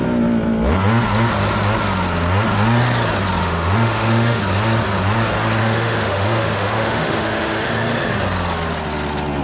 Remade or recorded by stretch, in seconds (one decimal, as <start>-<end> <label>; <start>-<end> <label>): 0.0-3.4 recorded; 3.4-4.4 remade; 4.4-5.6 recorded; 5.6-7.7 remade; 7.7-9.4 recorded